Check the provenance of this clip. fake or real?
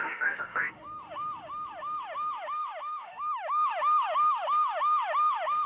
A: fake